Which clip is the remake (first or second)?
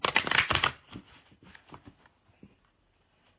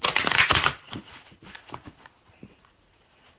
second